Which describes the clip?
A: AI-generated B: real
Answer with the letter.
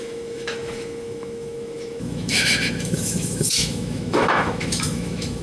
A